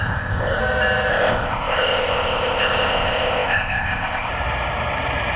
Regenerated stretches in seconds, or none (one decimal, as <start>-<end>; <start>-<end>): 0.0-0.6; 1.1-4.3